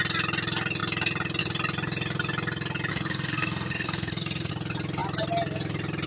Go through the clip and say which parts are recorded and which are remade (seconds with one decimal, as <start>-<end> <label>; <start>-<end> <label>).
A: 0.0-2.9 recorded; 2.9-4.5 remade; 4.5-6.1 recorded